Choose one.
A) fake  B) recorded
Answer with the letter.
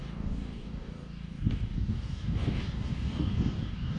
A